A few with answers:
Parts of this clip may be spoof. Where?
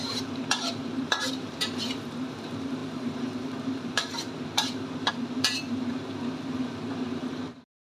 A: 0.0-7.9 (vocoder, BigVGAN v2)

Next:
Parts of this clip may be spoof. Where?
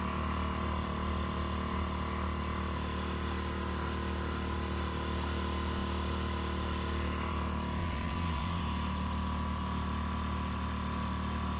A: 7.8-8.6 (vocoder, WaveNeXt)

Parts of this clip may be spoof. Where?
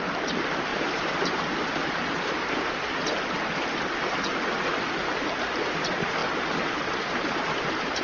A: 0.7-3.2 (vocoder, BigVGAN v2)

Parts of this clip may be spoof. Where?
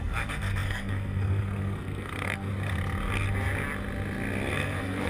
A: 0.0-2.5 (codec, SNAC); 4.5-5.1